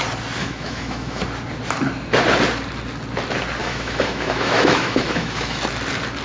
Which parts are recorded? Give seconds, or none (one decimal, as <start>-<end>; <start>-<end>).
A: 0.0-0.4; 1.2-3.6; 5.6-6.2